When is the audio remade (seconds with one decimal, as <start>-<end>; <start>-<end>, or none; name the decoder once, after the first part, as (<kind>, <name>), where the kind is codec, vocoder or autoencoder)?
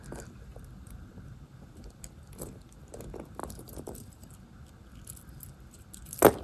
0.5-1.3 (vocoder, BigVGAN v2); 3.4-4.3